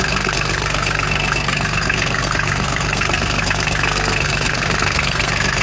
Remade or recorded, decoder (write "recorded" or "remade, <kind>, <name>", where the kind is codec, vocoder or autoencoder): remade, codec, SNAC